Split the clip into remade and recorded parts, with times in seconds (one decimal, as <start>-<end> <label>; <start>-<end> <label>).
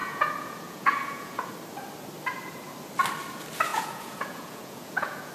0.0-1.5 remade; 1.5-3.7 recorded; 3.7-5.3 remade